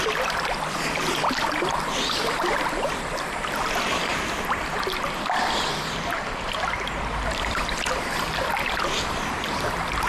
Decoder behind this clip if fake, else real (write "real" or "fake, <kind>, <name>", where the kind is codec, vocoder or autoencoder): fake, vocoder, BigVGAN v2